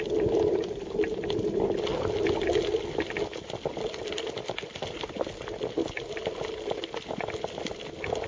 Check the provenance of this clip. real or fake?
real